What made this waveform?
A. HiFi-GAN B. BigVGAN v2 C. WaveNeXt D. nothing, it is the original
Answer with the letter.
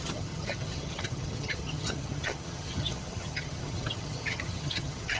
A